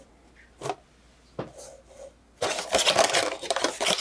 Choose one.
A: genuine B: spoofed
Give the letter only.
A